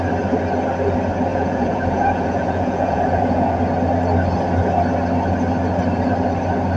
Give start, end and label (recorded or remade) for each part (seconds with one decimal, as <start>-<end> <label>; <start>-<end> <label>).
0.0-1.3 recorded; 1.3-3.6 remade; 3.6-6.8 recorded